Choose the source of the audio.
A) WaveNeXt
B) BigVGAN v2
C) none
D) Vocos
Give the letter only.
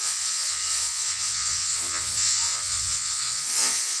D